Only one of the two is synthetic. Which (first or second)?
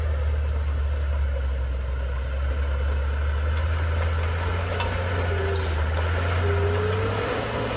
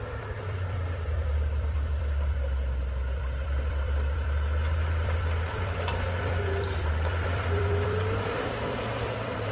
second